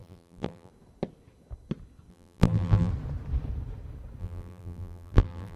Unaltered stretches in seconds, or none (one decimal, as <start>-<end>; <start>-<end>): 0.7-2.1; 2.9-4.2